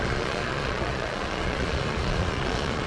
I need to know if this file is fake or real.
fake